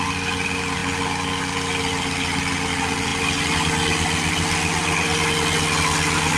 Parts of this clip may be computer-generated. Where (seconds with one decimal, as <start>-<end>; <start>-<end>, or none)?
none